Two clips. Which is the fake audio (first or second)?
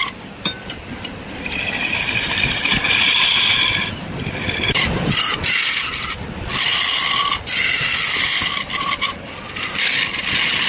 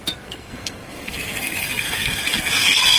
second